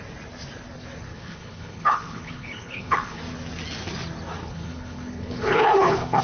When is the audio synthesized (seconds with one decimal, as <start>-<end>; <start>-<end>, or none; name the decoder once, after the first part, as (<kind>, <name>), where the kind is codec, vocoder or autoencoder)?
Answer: 1.1-3.2 (codec, HILCodec); 4.4-6.2